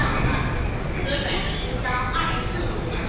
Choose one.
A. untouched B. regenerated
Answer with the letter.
A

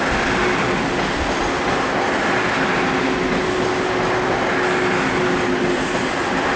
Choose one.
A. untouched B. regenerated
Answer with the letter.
A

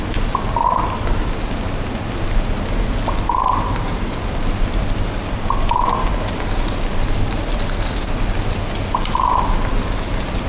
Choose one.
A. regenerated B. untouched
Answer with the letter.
B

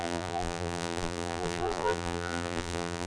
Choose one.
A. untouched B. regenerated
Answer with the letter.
B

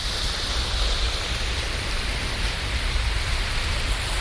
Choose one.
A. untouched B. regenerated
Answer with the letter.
B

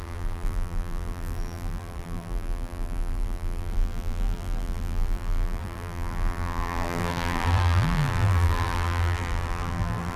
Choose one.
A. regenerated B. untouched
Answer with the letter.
A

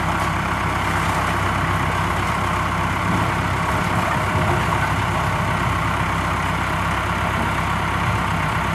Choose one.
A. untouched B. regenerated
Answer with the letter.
B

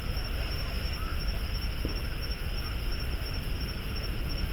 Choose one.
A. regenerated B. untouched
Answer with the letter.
B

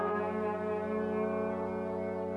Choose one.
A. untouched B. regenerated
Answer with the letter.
A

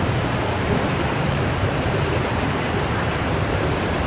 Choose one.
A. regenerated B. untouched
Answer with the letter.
A